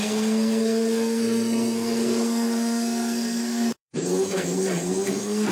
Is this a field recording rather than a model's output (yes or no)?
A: no